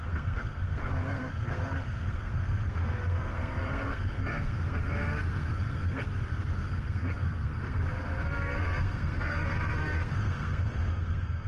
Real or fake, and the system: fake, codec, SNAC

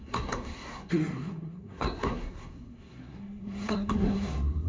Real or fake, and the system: fake, codec, SNAC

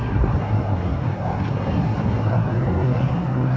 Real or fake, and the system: fake, codec, SNAC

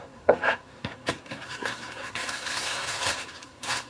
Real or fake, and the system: fake, codec, SNAC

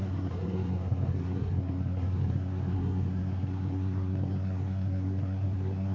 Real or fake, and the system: fake, codec, SNAC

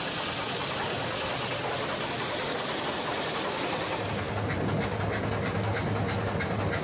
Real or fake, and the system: real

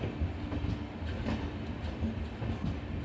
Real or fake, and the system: real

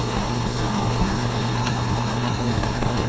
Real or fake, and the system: fake, codec, SNAC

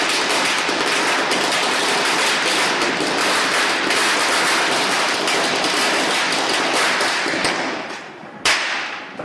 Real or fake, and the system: real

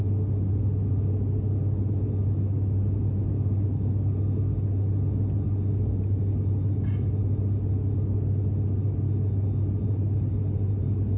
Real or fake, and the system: real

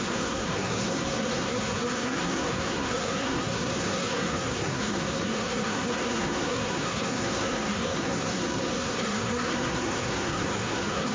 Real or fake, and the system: fake, codec, SNAC